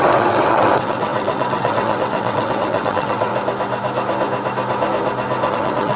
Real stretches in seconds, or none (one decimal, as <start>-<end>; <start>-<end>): 3.3-5.5